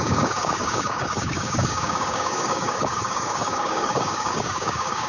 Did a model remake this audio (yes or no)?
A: yes